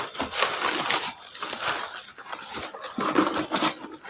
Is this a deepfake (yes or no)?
no